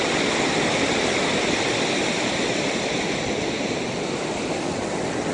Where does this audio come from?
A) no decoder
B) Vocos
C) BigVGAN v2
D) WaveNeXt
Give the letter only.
A